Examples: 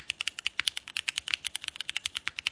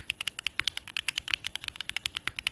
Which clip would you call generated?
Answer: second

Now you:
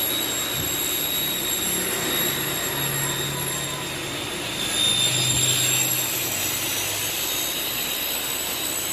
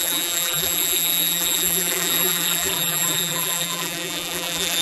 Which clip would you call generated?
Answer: second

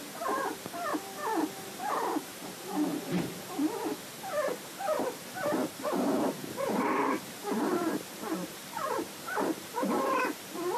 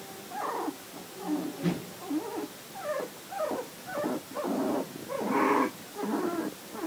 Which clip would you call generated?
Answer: first